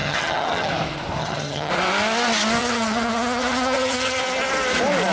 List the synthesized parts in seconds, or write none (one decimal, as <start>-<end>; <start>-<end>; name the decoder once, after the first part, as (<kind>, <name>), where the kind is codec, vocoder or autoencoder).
0.0-0.7 (vocoder, HiFi-GAN); 1.2-1.7; 2.6-4.2